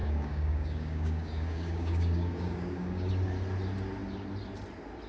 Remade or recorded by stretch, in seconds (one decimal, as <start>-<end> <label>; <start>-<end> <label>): 0.0-3.1 remade; 3.1-5.1 recorded